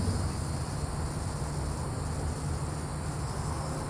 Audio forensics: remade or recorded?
recorded